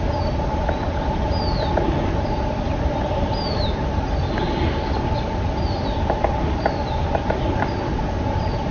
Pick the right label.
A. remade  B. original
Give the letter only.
B